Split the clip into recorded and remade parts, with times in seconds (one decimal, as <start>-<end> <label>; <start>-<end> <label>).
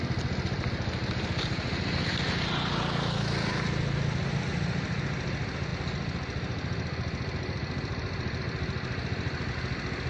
0.0-10.1 recorded